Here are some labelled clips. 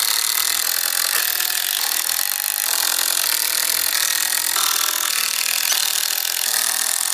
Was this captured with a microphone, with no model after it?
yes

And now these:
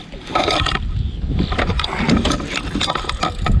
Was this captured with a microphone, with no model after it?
yes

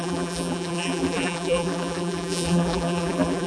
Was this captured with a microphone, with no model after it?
no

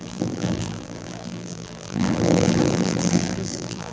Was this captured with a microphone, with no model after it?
no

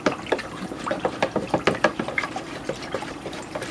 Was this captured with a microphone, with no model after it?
no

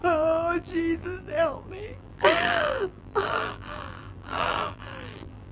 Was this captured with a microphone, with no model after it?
no